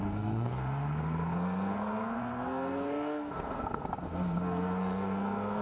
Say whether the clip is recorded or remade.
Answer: remade